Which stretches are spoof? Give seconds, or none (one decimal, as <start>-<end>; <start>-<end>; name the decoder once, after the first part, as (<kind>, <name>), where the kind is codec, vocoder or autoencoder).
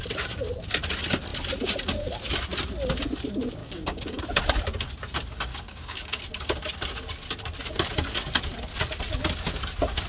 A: 3.6-4.2 (codec, DAC); 5.5-6.2